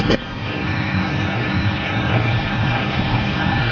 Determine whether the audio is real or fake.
fake